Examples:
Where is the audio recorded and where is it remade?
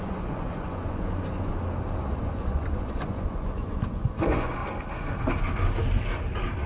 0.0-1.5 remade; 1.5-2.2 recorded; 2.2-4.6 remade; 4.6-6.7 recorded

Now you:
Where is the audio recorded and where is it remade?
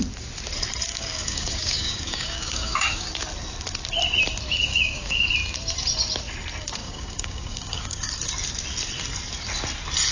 0.0-0.9 recorded; 0.9-3.1 remade; 3.1-4.7 recorded; 4.7-5.3 remade; 5.3-6.8 recorded; 6.8-8.1 remade; 8.1-10.1 recorded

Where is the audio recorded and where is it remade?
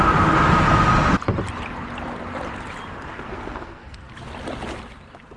0.0-3.1 recorded; 3.1-4.1 remade; 4.1-5.4 recorded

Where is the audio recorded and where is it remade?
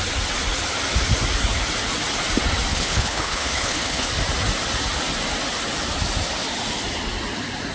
0.0-2.7 recorded; 2.7-4.1 remade; 4.1-7.7 recorded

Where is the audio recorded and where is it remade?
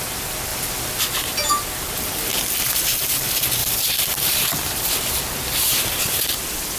0.0-0.5 recorded; 0.5-1.0 remade; 1.0-3.6 recorded; 3.6-4.8 remade; 4.8-6.8 recorded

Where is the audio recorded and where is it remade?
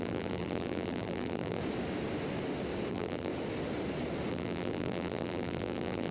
0.0-1.6 remade; 1.6-2.9 recorded; 2.9-3.3 remade; 3.3-4.3 recorded; 4.3-6.1 remade